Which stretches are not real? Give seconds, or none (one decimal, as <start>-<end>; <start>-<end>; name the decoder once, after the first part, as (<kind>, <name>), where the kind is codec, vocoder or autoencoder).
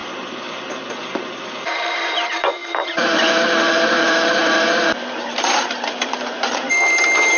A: 0.0-7.4 (vocoder, BigVGAN v2)